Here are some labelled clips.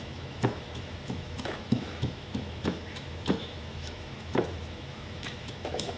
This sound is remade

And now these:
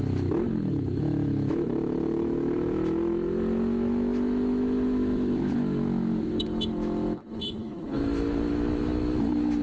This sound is remade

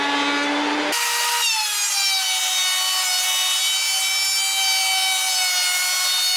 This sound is recorded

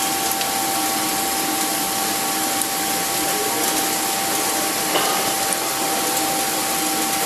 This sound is recorded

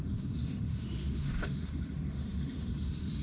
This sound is remade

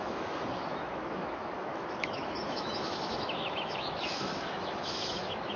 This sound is remade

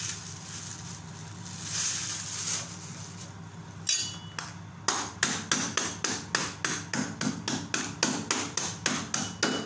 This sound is recorded